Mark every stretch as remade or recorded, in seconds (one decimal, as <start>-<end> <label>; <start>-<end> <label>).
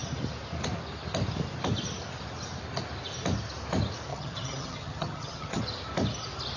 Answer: 0.0-4.1 recorded; 4.1-5.6 remade; 5.6-6.6 recorded